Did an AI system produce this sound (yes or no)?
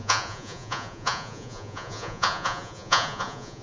yes